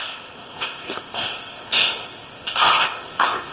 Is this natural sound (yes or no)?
no